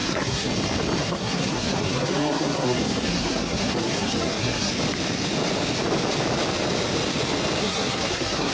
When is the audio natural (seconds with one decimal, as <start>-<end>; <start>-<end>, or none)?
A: 0.5-1.0; 4.7-7.6